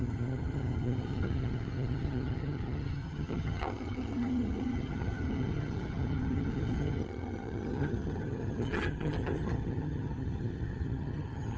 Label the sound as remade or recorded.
remade